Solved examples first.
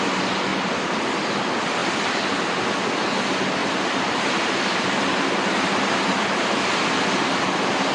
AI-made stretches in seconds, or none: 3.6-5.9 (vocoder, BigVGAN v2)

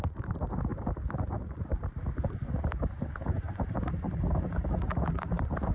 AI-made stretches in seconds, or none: 0.0-0.7 (vocoder, BigVGAN v2); 1.3-5.7

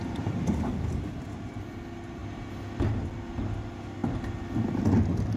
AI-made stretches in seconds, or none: 0.0-0.7 (vocoder, BigVGAN v2)

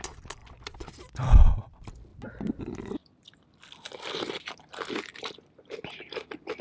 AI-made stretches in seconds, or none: 0.4-1.6 (vocoder, BigVGAN v2); 3.0-4.3

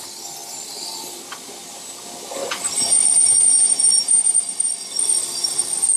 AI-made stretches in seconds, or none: 0.4-1.7 (vocoder, BigVGAN v2); 2.4-4.7

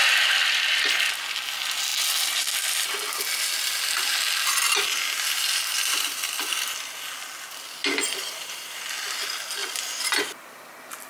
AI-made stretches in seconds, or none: 8.1-8.7 (vocoder, BigVGAN v2); 9.6-10.2

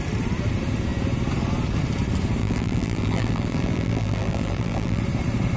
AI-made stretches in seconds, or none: 2.4-5.0 (vocoder, BigVGAN v2)